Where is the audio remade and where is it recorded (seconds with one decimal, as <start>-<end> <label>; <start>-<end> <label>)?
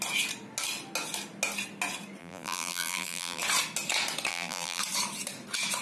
0.0-2.2 recorded; 2.2-3.4 remade; 3.4-4.3 recorded; 4.3-4.8 remade; 4.8-5.8 recorded